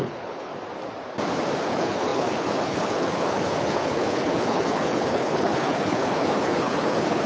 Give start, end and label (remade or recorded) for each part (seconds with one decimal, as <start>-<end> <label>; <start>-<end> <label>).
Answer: 0.0-0.5 remade; 0.5-1.6 recorded; 1.6-7.3 remade